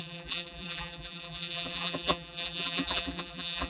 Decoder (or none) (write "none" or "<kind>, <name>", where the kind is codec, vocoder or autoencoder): vocoder, BigVGAN v2